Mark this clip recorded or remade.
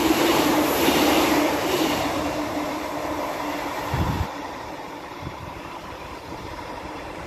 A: remade